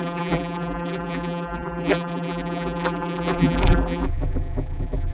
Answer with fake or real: fake